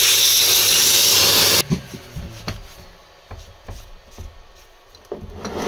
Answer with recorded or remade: recorded